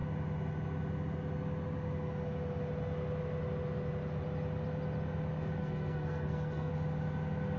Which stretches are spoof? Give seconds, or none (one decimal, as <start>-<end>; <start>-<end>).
5.6-6.7

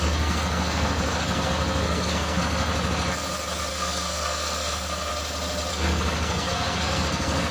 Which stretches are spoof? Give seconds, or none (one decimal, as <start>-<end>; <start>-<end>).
0.0-2.7; 3.7-5.1; 5.7-7.5

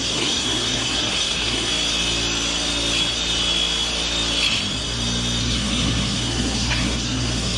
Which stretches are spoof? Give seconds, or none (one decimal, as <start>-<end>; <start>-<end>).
0.0-1.7; 5.4-7.6

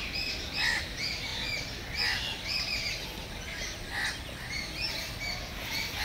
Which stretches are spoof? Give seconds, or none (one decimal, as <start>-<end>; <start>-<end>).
none

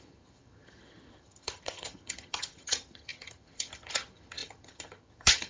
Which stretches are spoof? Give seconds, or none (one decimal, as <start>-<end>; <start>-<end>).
0.0-5.5